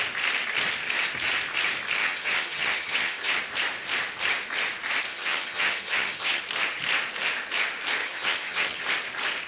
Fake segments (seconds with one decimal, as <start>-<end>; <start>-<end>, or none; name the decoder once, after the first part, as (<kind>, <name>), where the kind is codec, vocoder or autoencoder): 2.0-3.4 (vocoder, HiFi-GAN); 5.1-6.4; 8.0-8.8

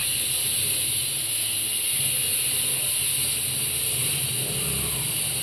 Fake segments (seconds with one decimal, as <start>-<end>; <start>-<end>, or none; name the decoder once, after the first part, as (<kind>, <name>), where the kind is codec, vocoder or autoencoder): none

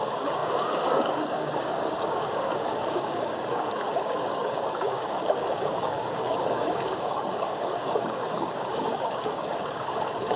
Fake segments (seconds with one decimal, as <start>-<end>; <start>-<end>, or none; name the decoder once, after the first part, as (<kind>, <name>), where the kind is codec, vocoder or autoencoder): 0.0-10.4 (codec, DAC)

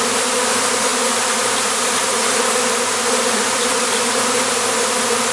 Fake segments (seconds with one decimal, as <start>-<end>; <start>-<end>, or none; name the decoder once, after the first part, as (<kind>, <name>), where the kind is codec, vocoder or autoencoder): 0.0-5.3 (vocoder, BigVGAN v2)

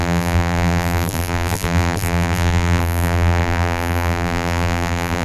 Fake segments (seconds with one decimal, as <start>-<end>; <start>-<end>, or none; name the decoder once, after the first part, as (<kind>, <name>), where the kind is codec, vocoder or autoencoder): 0.0-5.2 (vocoder, BigVGAN v2)

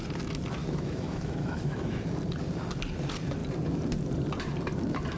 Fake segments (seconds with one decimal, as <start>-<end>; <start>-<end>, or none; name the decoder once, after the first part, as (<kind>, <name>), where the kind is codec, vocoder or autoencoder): 0.6-2.0 (autoencoder, DAC-VAE)

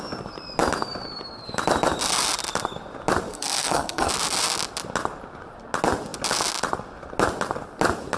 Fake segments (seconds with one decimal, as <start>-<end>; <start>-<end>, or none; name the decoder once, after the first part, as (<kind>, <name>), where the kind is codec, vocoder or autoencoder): 3.3-4.1 (codec, SNAC)